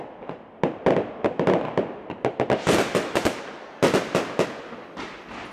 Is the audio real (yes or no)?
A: yes